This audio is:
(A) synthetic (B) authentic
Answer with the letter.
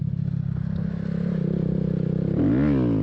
B